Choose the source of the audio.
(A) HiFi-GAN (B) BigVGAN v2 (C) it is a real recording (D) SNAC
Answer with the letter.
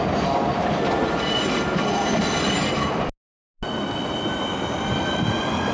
C